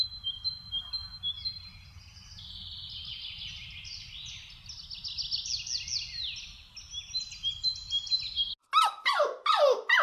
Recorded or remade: recorded